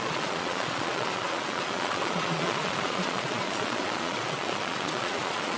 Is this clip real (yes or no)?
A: no